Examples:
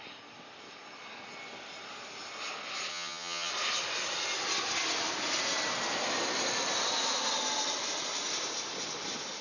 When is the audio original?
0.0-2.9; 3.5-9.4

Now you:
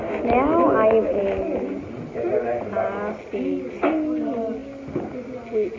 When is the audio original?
0.0-5.8

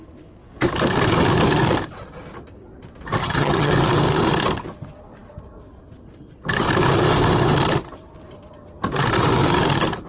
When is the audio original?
0.0-3.2; 3.7-10.1

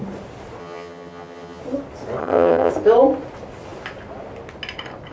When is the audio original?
0.0-0.6; 1.6-2.2; 2.7-5.1

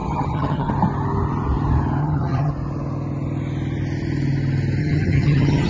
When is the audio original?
0.7-2.0; 2.5-4.8

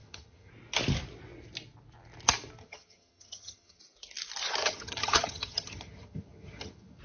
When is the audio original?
0.5-2.6; 3.8-4.6